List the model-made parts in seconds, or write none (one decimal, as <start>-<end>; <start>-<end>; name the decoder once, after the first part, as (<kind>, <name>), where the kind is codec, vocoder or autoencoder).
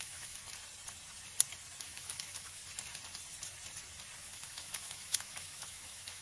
0.0-0.4 (autoencoder, DAC-VAE); 1.8-2.6; 4.2-6.2